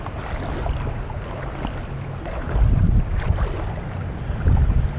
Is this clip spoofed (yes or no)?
no